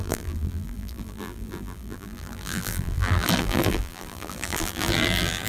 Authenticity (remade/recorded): remade